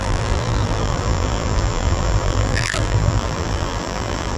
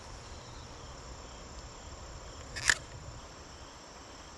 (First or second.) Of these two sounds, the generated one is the first